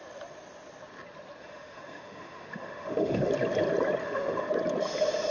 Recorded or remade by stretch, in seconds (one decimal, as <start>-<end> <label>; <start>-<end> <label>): 0.0-1.4 recorded; 1.4-3.3 remade; 3.3-4.0 recorded; 4.0-4.5 remade; 4.5-5.3 recorded